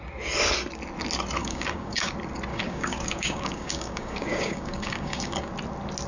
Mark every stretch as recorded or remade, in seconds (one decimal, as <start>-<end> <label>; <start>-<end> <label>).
0.0-1.4 recorded; 1.4-2.1 remade; 2.1-2.5 recorded; 2.5-5.5 remade; 5.5-6.1 recorded